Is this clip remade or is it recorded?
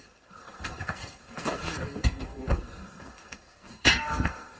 remade